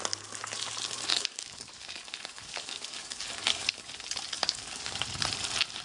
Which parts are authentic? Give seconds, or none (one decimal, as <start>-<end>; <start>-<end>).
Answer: 0.0-1.1; 3.7-4.4; 5.0-5.8